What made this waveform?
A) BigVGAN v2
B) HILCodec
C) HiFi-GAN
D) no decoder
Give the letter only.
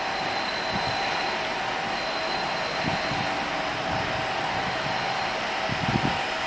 D